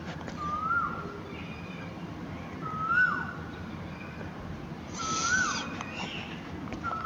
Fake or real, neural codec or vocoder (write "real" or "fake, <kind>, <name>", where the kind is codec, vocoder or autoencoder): real